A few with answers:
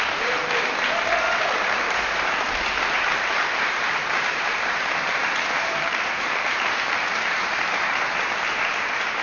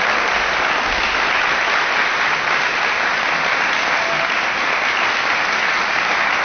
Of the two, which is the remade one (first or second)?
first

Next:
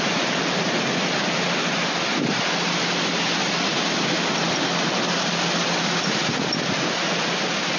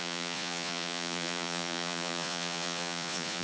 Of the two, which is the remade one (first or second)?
second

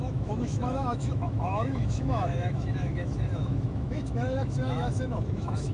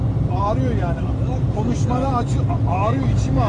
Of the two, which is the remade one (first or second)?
first